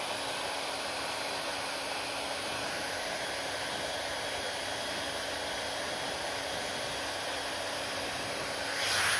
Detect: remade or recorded recorded